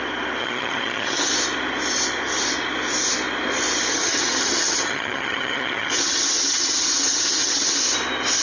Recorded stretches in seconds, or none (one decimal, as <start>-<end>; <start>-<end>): 0.0-0.4; 1.3-3.9; 7.8-8.4